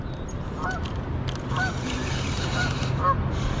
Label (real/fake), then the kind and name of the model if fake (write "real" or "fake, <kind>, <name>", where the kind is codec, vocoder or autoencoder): real